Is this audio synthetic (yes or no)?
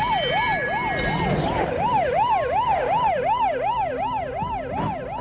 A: no